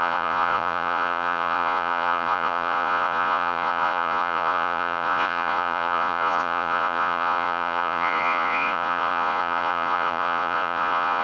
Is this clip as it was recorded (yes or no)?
no